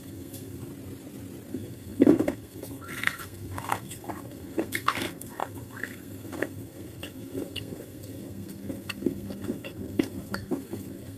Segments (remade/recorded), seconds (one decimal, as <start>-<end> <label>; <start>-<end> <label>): 0.0-0.7 remade; 0.7-1.5 recorded; 1.5-11.2 remade